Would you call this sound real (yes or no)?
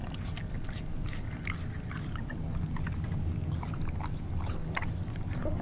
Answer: yes